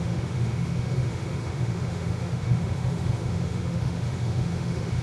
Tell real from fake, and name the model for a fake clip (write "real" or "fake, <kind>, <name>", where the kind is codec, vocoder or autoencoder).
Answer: fake, autoencoder, DAC-VAE